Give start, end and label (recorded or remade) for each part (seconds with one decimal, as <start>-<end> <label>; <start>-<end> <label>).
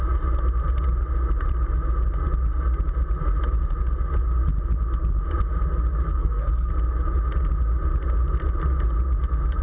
0.0-6.1 recorded; 6.1-6.7 remade; 6.7-9.6 recorded